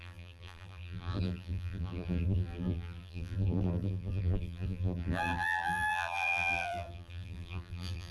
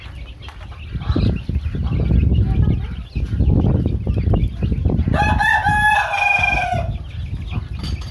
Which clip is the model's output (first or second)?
first